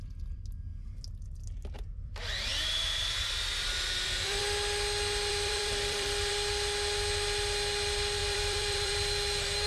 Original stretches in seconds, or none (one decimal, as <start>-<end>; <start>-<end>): 0.0-2.5; 4.4-5.3; 6.3-8.2; 8.9-9.7